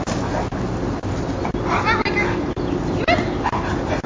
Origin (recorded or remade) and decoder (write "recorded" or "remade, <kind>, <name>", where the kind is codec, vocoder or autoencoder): recorded